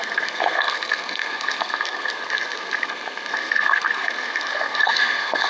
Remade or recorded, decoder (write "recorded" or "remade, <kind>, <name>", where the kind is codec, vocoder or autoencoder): remade, codec, SNAC